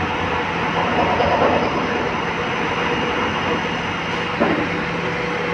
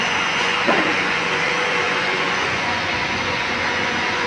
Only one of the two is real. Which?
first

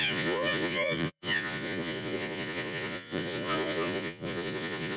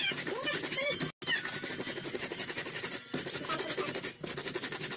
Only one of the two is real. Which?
second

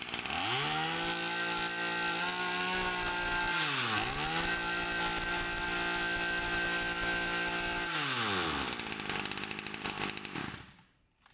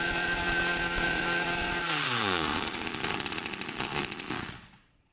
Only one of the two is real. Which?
first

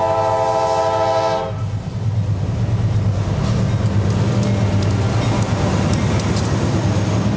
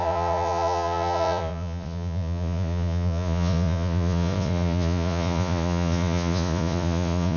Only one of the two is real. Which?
first